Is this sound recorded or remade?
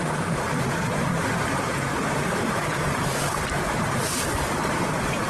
remade